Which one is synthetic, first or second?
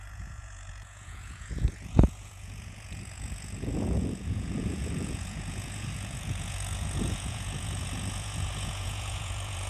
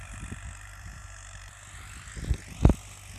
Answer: first